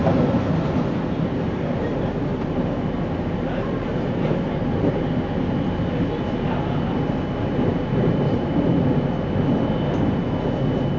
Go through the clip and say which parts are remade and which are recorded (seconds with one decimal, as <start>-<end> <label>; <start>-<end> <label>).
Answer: 0.0-2.3 recorded; 2.3-5.0 remade; 5.0-7.7 recorded; 7.7-8.5 remade; 8.5-11.0 recorded